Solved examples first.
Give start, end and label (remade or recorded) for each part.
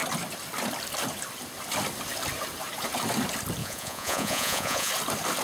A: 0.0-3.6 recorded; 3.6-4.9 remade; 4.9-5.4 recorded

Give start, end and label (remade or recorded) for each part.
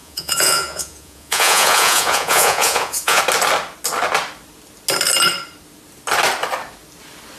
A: 0.0-3.2 remade; 3.2-7.4 recorded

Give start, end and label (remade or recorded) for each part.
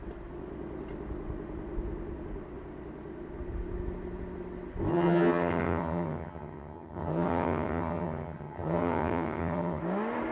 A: 0.0-4.9 recorded; 4.9-9.8 remade; 9.8-10.3 recorded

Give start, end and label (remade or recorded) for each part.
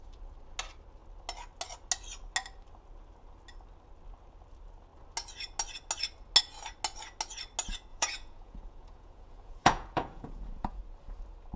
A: 0.0-7.9 recorded; 7.9-10.8 remade; 10.8-11.6 recorded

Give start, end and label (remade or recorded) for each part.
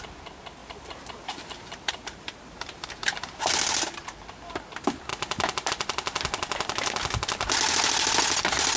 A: 0.0-0.6 recorded; 0.6-3.5 remade; 3.5-8.8 recorded